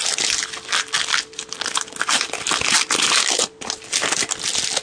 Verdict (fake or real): real